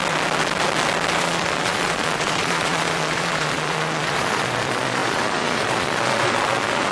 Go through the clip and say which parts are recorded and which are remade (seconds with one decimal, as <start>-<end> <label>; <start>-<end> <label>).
0.0-1.2 recorded; 1.2-6.9 remade